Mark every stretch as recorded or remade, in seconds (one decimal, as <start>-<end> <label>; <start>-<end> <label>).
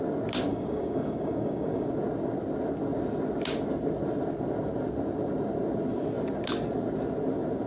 0.0-0.5 recorded; 0.5-1.9 remade; 1.9-7.7 recorded